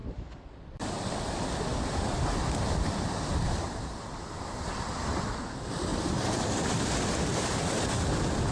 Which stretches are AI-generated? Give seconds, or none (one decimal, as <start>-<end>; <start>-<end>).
0.0-5.1; 5.9-6.8; 7.3-8.0